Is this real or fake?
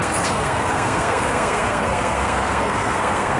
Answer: fake